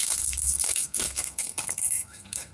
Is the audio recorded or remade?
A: remade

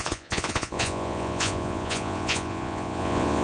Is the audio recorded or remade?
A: remade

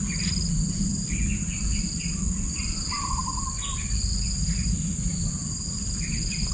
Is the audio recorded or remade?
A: remade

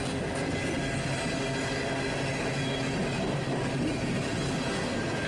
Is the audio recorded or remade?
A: recorded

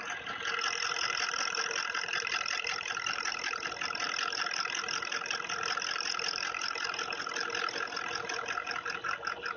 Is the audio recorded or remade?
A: recorded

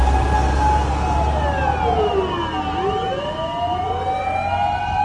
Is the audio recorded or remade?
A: recorded